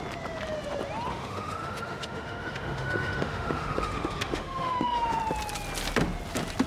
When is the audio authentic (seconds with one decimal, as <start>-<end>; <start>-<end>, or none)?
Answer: 0.0-1.1; 5.1-6.7